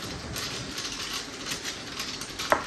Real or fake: fake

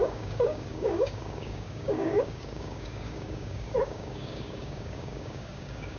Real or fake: fake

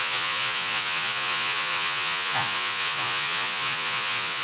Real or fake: fake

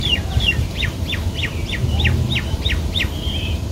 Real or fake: real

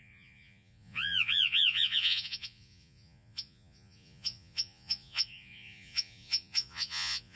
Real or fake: fake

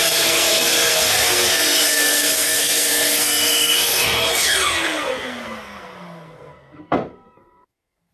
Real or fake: fake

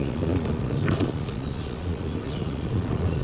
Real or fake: fake